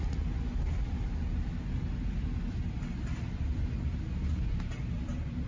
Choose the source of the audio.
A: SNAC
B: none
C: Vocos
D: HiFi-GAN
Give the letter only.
B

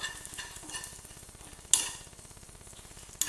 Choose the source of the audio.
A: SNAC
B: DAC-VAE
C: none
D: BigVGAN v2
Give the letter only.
C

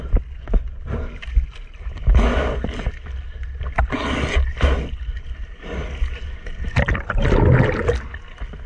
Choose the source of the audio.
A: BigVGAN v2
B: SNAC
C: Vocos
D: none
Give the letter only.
D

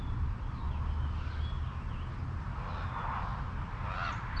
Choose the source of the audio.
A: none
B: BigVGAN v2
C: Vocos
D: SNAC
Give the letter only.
A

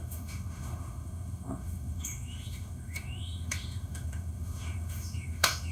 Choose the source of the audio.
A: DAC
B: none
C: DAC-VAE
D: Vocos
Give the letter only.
C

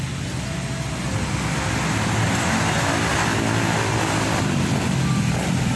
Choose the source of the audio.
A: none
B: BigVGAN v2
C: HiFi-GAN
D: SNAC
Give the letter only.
A